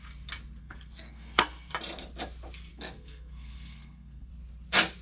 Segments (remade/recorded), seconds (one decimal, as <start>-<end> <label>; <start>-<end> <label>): 0.0-0.6 recorded; 0.6-1.7 remade; 1.7-2.7 recorded; 2.7-4.3 remade; 4.3-5.0 recorded